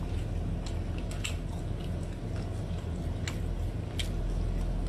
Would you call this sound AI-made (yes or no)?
no